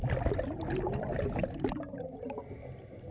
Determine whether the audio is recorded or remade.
recorded